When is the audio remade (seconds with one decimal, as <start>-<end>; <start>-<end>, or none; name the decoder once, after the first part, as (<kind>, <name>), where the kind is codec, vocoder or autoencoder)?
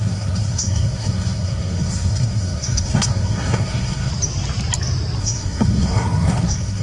0.0-4.1 (codec, SNAC); 5.2-6.8